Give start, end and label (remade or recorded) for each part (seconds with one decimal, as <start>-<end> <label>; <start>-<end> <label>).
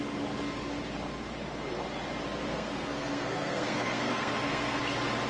0.0-2.5 recorded; 2.5-4.8 remade; 4.8-5.3 recorded